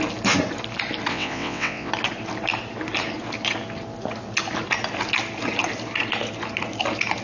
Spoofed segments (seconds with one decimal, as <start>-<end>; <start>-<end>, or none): 1.1-1.9